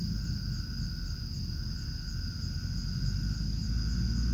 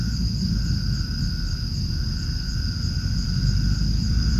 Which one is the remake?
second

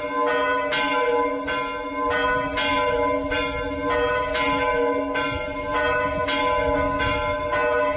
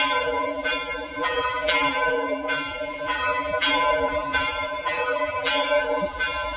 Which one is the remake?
second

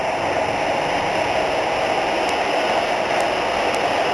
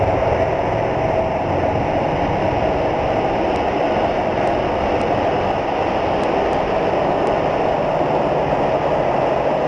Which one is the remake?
second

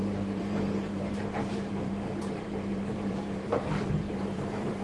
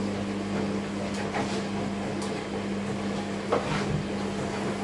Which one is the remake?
first